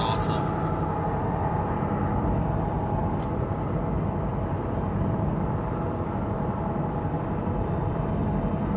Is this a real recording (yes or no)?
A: yes